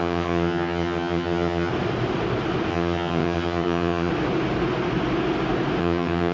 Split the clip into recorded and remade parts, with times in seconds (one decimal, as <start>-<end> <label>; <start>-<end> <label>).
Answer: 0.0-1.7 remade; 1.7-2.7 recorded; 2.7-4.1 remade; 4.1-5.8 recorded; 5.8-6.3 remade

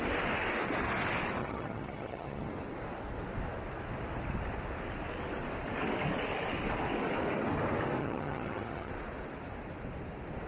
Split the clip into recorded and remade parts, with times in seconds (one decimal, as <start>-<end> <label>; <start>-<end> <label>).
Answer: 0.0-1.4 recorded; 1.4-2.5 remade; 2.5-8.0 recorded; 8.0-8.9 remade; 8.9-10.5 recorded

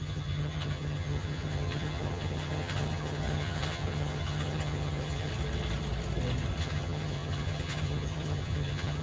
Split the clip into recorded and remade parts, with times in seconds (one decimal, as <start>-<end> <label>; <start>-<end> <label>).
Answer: 0.0-5.3 remade; 5.3-6.6 recorded; 6.6-9.0 remade

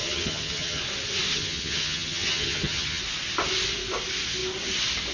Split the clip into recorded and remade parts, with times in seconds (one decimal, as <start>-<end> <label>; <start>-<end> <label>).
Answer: 0.0-0.8 remade; 0.8-1.3 recorded; 1.3-3.0 remade; 3.0-5.1 recorded

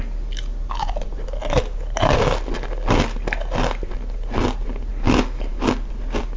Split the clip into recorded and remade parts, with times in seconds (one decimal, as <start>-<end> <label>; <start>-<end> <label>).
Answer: 0.0-6.4 recorded

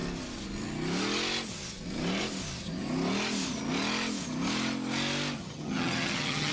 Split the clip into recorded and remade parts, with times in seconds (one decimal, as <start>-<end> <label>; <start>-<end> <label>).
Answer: 0.0-5.4 recorded; 5.4-6.5 remade

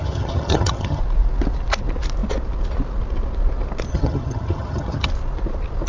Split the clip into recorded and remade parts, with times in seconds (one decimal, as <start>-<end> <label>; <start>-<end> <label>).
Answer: 0.0-1.0 remade; 1.0-3.9 recorded; 3.9-5.1 remade; 5.1-5.9 recorded